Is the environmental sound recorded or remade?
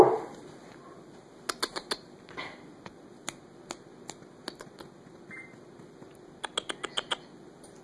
recorded